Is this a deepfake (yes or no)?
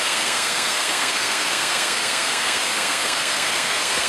yes